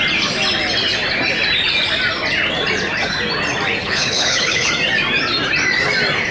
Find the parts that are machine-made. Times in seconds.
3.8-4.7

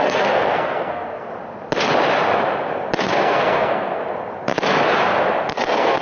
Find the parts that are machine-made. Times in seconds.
0.0-1.3; 3.0-4.0; 5.5-6.0

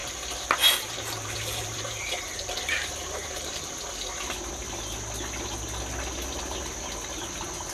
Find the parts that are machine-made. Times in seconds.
0.0-3.8